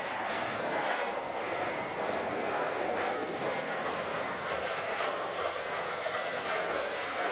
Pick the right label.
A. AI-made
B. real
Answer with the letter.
A